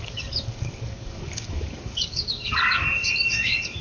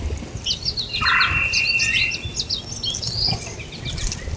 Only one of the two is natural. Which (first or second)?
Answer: second